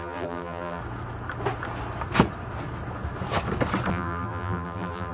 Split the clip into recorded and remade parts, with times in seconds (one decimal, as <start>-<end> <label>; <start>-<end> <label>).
0.0-0.8 remade; 0.8-3.9 recorded; 3.9-5.1 remade